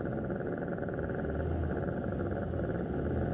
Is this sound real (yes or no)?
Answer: yes